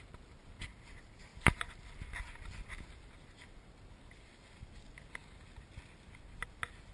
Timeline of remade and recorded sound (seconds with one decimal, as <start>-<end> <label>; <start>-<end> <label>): 0.0-6.9 recorded